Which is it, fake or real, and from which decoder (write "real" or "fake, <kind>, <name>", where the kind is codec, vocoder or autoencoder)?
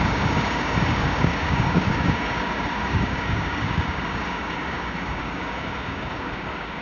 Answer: fake, codec, DAC